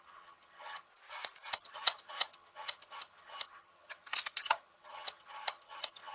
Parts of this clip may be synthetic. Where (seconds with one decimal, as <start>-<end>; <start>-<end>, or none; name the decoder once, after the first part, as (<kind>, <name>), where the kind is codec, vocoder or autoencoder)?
0.0-0.9 (vocoder, HiFi-GAN); 1.5-6.1